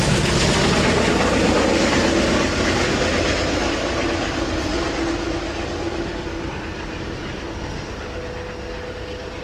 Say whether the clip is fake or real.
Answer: real